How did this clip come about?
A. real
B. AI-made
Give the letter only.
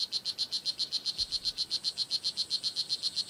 A